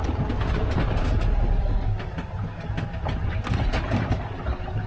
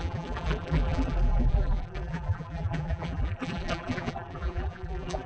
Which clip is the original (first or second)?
first